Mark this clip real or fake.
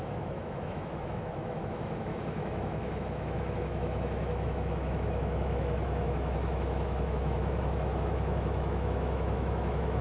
fake